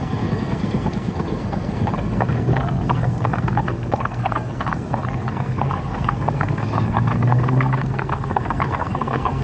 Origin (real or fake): fake